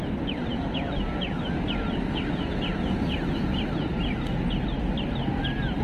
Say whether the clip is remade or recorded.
recorded